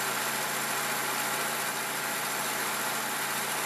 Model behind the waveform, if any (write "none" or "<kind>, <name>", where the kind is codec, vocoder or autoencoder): none